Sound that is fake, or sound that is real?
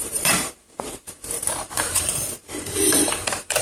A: fake